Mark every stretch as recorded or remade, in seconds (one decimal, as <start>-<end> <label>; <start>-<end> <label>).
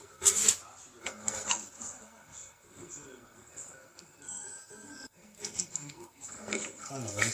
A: 0.0-0.4 remade; 0.4-1.0 recorded; 1.0-7.3 remade